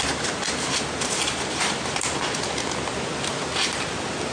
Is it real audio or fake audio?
real